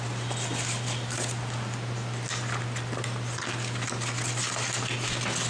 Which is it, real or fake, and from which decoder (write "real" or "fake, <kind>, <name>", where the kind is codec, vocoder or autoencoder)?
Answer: real